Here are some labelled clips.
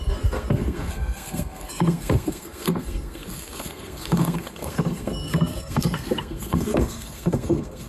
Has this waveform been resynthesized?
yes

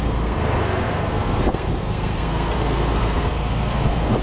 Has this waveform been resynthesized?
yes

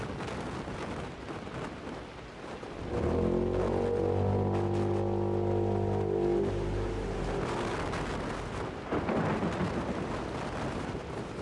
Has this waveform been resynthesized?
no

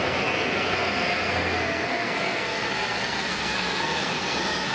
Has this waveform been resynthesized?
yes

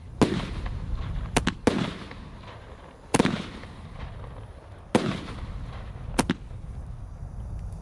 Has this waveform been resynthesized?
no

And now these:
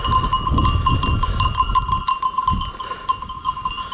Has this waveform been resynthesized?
no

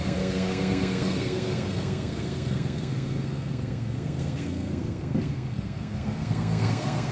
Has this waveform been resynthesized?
yes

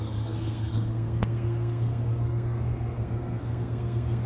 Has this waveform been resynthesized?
yes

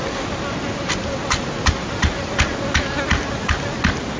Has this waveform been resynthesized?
no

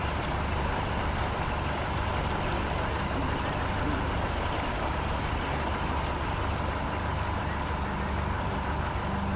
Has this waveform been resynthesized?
no